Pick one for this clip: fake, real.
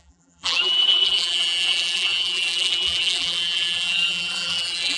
fake